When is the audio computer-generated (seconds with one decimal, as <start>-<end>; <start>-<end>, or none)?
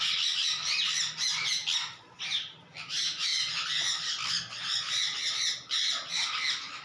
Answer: none